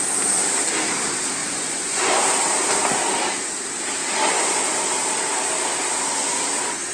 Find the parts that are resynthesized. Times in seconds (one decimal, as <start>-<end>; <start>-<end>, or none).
1.4-2.2; 4.0-4.6